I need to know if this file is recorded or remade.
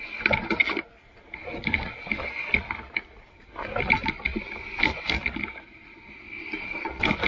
recorded